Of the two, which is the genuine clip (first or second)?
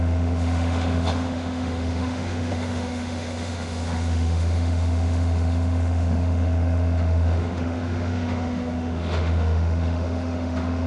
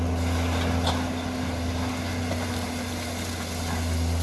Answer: second